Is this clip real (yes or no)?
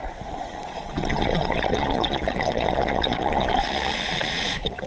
no